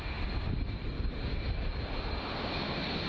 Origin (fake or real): real